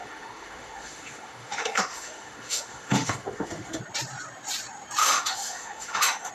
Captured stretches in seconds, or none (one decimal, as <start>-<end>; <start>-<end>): 3.8-5.0